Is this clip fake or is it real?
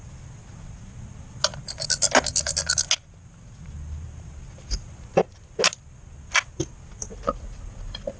real